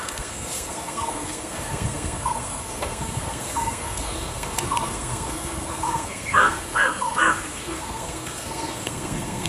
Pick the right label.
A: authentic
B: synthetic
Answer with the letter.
B